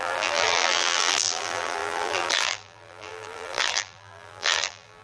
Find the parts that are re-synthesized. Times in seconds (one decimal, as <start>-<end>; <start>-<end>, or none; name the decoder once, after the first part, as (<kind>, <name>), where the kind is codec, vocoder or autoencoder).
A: 0.0-5.0 (vocoder, BigVGAN v2)